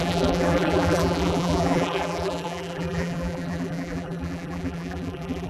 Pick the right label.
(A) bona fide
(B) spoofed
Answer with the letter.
B